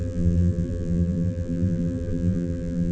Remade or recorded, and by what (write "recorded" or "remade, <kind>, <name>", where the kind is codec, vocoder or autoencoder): remade, vocoder, BigVGAN v2